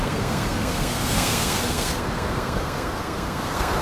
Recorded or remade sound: remade